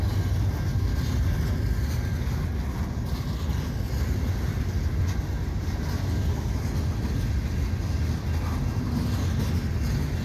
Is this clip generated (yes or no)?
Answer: no